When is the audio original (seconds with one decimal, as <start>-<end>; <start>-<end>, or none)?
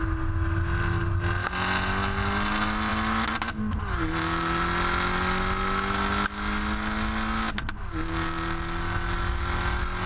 0.0-10.1